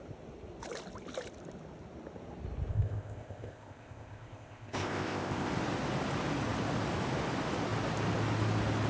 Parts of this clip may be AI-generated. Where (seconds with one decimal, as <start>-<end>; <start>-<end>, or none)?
2.7-5.5